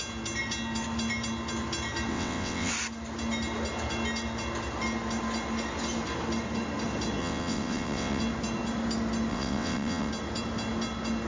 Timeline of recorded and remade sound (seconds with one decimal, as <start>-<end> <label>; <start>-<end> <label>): 0.0-2.1 recorded; 2.1-2.7 remade; 2.7-7.2 recorded; 7.2-8.2 remade; 8.2-9.3 recorded; 9.3-10.1 remade; 10.1-11.3 recorded